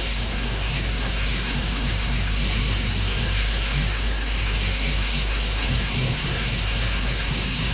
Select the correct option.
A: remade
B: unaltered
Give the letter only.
A